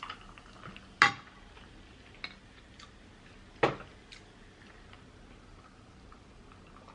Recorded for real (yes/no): yes